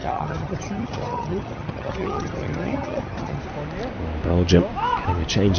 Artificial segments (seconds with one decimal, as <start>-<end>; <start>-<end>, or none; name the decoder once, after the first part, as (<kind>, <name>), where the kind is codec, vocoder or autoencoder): 0.0-3.4 (vocoder, HiFi-GAN)